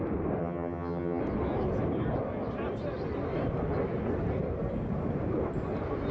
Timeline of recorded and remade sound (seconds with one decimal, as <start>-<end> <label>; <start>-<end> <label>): 0.0-0.4 recorded; 0.4-1.2 remade; 1.2-6.1 recorded